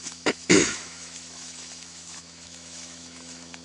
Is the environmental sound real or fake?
fake